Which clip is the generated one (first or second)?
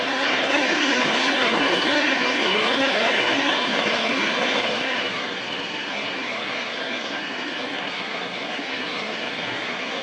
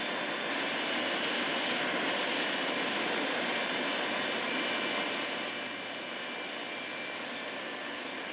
first